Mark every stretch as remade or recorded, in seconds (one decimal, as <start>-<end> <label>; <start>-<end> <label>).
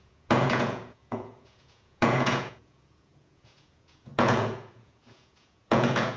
0.0-6.2 remade